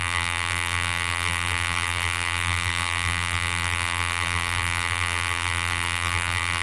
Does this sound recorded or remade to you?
remade